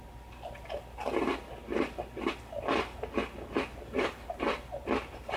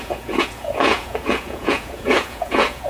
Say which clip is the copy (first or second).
second